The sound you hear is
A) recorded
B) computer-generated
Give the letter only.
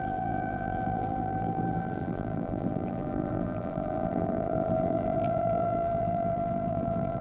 B